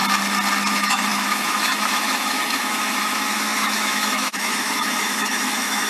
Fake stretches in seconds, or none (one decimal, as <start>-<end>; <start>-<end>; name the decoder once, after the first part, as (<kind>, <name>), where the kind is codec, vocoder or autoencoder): 0.7-5.9 (autoencoder, DAC-VAE)